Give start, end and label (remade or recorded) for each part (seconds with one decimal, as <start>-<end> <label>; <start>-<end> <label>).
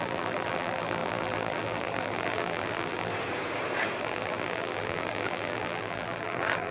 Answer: 0.0-3.1 remade; 3.1-4.0 recorded; 4.0-6.7 remade